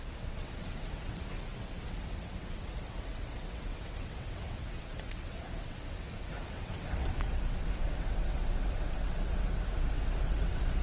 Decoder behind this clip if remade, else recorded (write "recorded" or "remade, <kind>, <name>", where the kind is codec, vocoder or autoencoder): remade, vocoder, WaveNeXt